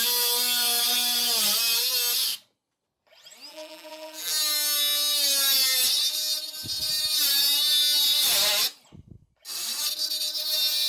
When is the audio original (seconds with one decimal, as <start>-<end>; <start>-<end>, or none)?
0.0-3.5; 4.3-10.9